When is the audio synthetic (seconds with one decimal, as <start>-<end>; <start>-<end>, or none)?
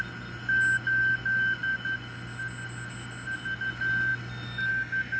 none